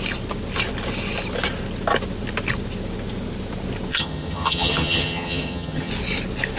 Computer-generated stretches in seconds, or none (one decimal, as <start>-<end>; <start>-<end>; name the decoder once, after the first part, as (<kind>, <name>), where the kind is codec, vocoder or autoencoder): 3.9-5.9 (vocoder, HiFi-GAN)